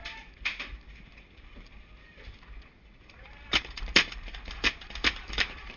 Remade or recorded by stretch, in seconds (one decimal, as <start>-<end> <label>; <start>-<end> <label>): 0.0-3.0 recorded; 3.0-5.8 remade